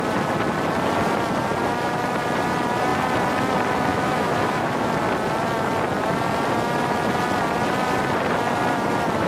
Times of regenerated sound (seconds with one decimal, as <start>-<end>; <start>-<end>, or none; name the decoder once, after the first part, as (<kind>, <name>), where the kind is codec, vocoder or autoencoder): 3.9-4.9 (autoencoder, DAC-VAE)